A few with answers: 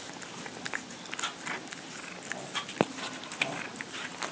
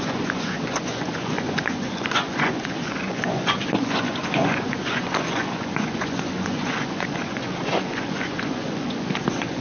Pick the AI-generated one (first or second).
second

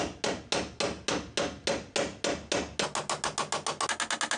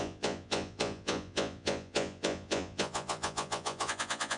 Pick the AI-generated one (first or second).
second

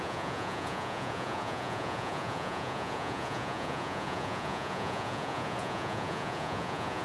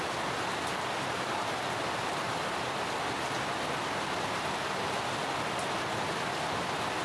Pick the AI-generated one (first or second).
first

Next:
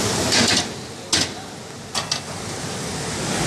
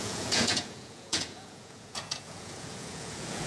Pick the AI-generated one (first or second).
second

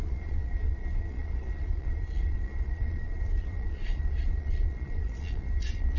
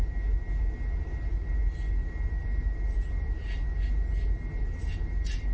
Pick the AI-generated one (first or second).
first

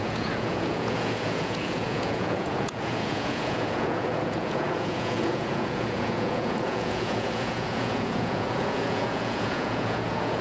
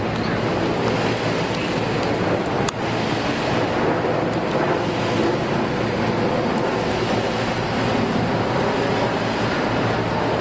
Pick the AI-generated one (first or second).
first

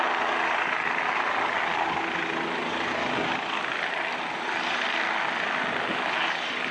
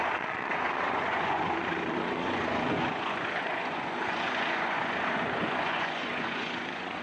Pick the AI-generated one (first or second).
second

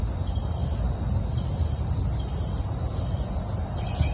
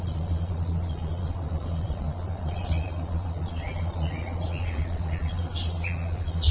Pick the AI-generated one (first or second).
second